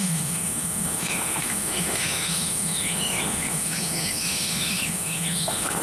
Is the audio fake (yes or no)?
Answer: yes